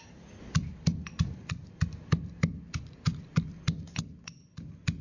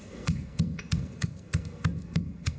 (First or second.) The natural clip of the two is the first